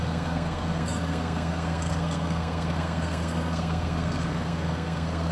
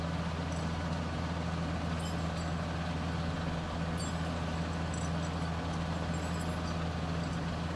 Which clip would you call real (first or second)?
second